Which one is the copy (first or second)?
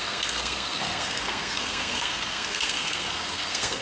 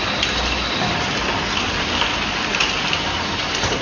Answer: first